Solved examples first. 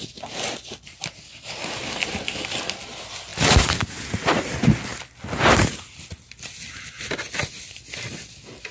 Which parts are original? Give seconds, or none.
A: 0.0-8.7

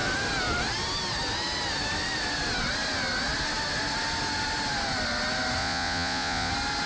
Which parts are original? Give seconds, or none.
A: 0.0-5.6; 6.5-6.9

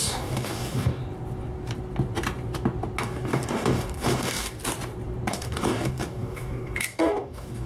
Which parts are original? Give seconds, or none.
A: 1.0-3.0; 4.6-5.3

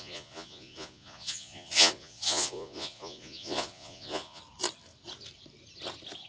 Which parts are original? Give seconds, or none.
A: 4.4-6.3

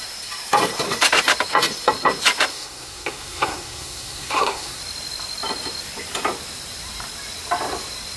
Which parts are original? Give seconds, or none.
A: 0.0-2.5; 4.8-8.2

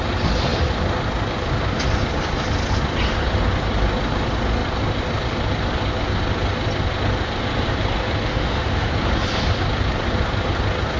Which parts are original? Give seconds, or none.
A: 0.0-8.3; 8.9-11.0

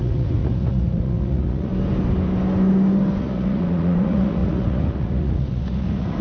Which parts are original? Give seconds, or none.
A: 1.7-3.2

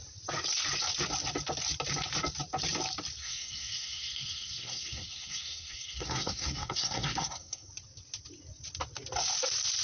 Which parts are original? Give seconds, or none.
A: 0.0-3.2; 7.7-9.8